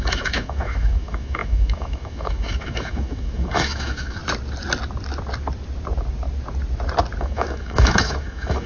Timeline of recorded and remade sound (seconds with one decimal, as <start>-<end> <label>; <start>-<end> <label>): 0.0-4.2 remade; 4.2-7.2 recorded; 7.2-8.7 remade